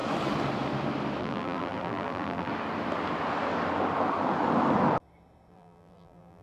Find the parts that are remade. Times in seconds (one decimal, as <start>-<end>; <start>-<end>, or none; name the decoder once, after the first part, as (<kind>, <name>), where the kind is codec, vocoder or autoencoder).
1.2-2.5 (vocoder, BigVGAN v2); 5.5-6.4